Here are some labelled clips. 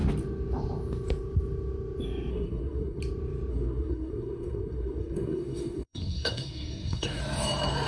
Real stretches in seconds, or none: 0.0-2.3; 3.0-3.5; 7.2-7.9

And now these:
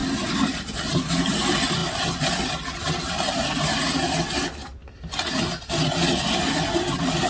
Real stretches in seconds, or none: 0.0-7.3